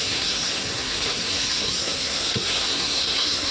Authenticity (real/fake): fake